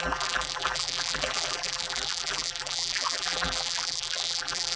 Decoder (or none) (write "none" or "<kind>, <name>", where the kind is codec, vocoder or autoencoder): vocoder, BigVGAN v2